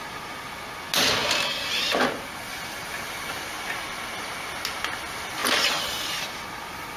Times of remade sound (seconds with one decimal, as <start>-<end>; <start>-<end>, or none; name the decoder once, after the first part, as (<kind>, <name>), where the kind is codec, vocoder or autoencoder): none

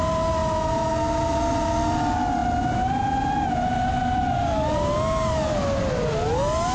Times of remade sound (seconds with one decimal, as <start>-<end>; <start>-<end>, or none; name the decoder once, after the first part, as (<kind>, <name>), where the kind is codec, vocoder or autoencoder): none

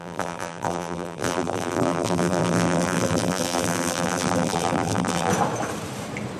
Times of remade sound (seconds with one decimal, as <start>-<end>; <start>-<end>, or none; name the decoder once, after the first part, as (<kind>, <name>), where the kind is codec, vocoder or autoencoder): 0.0-5.3 (vocoder, BigVGAN v2)